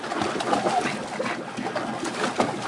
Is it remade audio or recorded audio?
recorded